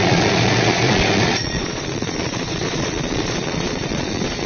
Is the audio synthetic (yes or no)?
yes